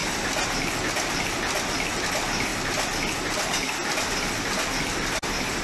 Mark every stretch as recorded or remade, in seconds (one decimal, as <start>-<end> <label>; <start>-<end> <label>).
0.0-5.6 recorded